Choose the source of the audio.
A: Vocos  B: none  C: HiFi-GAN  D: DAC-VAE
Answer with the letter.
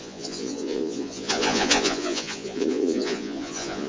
A